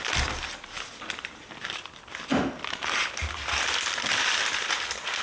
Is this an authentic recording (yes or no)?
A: yes